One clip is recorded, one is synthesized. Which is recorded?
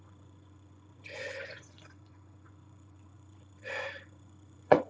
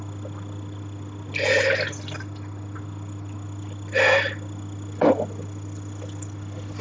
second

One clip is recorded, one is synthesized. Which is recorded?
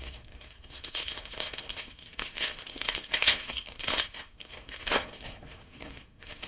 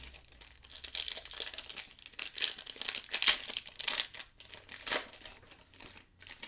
second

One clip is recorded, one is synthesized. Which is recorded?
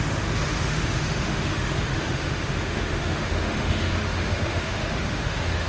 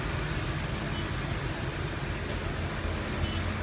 second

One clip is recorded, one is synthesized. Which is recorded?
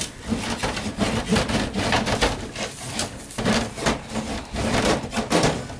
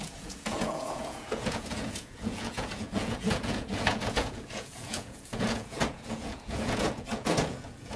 first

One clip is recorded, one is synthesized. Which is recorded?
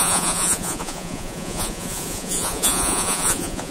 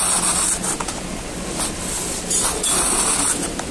second